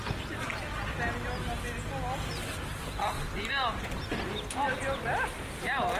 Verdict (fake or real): real